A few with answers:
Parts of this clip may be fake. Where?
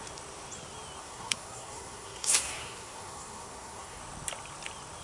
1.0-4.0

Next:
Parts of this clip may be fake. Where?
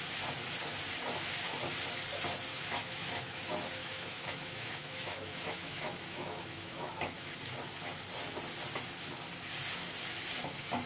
2.5-3.4; 3.8-7.3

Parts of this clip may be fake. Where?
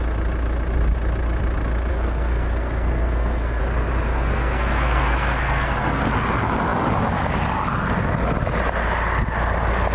1.9-3.6; 4.1-6.0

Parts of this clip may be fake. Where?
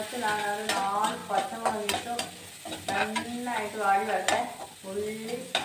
none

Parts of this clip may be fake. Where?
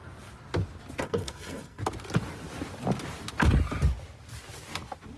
1.0-1.8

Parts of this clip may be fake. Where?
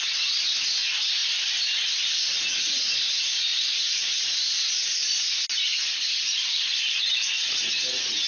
3.5-4.2; 5.7-7.7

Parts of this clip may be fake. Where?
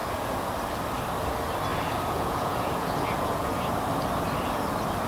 0.0-0.5; 1.7-3.7